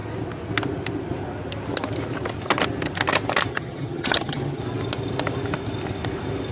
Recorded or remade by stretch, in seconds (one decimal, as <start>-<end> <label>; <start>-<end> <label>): 0.0-3.5 recorded; 3.5-4.6 remade; 4.6-6.5 recorded